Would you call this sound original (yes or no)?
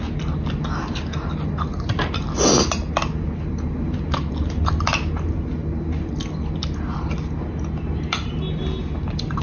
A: yes